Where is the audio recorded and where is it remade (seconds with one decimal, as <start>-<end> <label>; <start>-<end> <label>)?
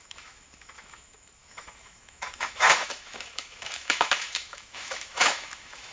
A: 0.0-5.9 remade